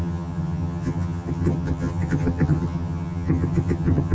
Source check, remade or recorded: remade